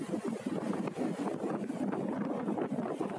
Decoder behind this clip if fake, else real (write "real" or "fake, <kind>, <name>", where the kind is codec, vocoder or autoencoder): real